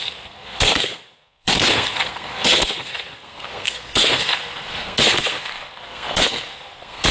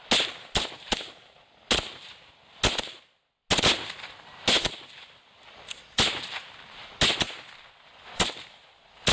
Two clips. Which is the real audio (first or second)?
second